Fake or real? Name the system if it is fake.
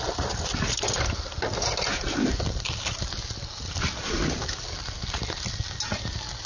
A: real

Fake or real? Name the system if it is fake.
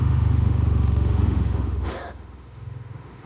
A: fake, autoencoder, DAC-VAE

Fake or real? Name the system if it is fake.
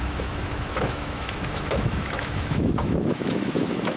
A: fake, autoencoder, DAC-VAE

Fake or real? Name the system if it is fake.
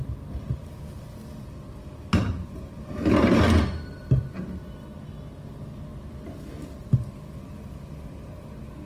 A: real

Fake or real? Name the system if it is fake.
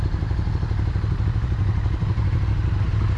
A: real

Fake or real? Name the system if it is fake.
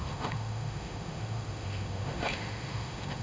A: fake, autoencoder, DAC-VAE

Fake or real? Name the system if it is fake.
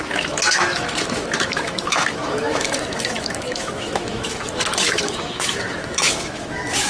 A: fake, autoencoder, DAC-VAE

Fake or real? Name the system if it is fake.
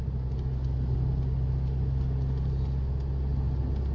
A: real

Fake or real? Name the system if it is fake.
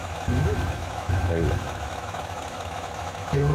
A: fake, autoencoder, DAC-VAE